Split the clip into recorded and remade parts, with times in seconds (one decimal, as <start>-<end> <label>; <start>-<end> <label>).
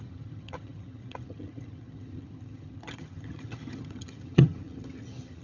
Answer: 0.0-5.4 remade